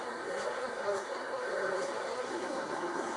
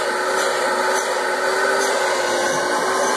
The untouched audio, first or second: second